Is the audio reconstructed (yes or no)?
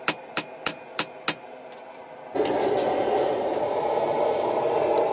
no